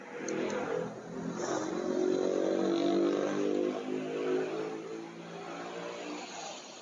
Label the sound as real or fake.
real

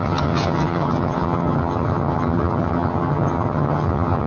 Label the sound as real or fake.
fake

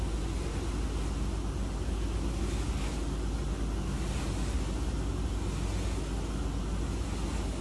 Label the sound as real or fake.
real